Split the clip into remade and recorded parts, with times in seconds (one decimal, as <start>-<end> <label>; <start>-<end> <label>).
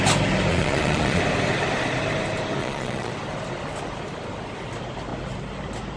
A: 0.0-0.5 recorded; 0.5-1.2 remade; 1.2-2.6 recorded; 2.6-3.1 remade; 3.1-6.0 recorded